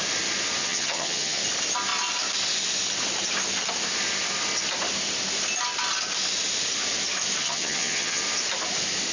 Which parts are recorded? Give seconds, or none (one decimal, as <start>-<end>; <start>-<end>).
0.0-0.6; 1.4-7.4; 8.2-9.1